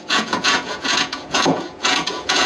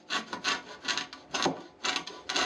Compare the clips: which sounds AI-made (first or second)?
first